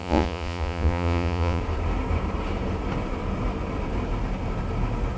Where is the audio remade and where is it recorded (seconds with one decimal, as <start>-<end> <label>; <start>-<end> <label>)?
0.0-1.6 remade; 1.6-5.2 recorded